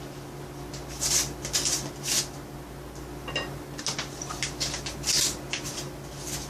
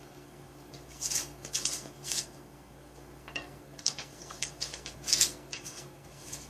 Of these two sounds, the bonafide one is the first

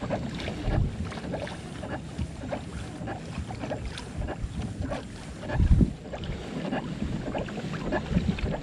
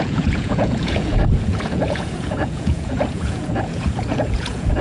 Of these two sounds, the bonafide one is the first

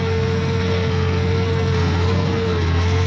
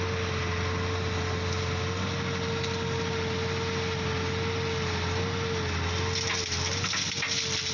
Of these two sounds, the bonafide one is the second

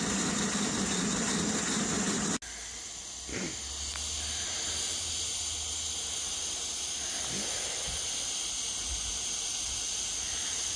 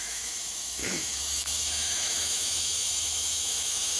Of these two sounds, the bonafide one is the first